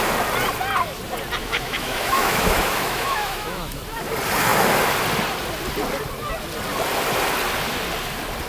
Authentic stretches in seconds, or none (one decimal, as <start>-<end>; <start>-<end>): 0.0-1.4; 3.8-8.5